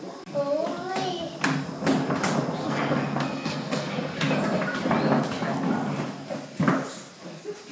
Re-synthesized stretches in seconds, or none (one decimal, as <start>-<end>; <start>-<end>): 2.6-3.9